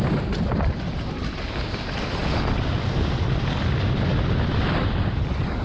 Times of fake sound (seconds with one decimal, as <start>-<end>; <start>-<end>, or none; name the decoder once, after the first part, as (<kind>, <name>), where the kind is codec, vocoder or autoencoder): none